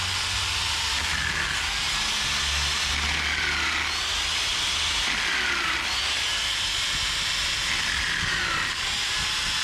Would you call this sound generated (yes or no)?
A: no